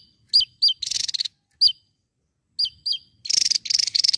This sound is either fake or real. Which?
real